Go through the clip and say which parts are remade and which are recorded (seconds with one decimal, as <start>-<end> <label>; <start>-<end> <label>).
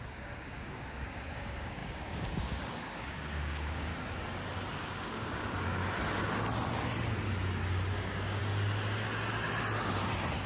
0.0-3.9 remade; 3.9-4.7 recorded; 4.7-5.8 remade; 5.8-7.9 recorded; 7.9-8.4 remade; 8.4-10.5 recorded